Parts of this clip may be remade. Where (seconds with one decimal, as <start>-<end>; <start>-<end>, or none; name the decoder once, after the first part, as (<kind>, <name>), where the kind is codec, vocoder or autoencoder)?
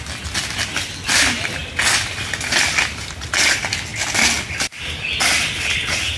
none